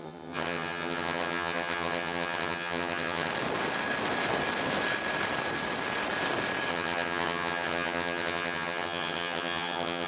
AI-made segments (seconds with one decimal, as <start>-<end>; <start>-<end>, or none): 0.0-3.3; 6.7-10.1